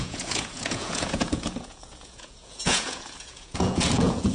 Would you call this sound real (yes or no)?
no